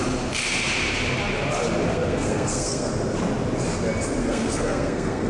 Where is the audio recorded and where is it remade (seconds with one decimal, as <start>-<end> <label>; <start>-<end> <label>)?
0.0-1.9 recorded; 1.9-2.9 remade; 2.9-4.2 recorded; 4.2-5.3 remade